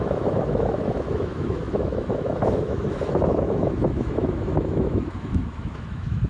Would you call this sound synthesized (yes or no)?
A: yes